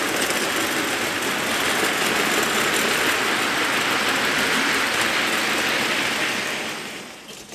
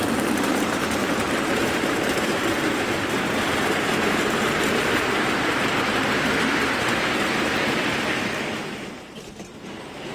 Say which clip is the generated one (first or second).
second